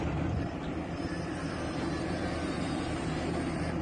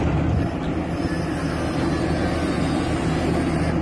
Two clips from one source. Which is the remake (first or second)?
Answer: first